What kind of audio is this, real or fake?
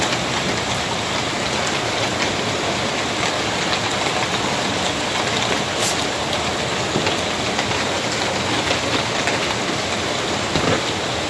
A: real